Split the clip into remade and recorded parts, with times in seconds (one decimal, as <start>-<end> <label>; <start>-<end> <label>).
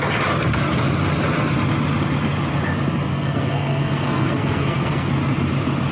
0.0-3.1 recorded; 3.1-5.1 remade; 5.1-5.9 recorded